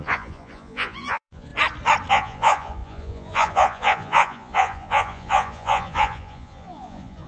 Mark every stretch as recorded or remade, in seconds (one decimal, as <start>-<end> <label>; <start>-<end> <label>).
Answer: 0.0-1.5 remade; 1.5-2.1 recorded; 2.1-7.3 remade